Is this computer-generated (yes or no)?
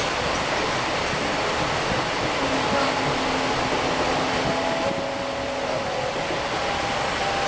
no